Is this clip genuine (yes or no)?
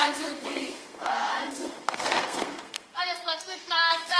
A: no